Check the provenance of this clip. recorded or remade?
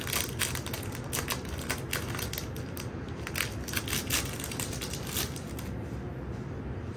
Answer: recorded